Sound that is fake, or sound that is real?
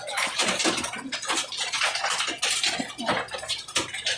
real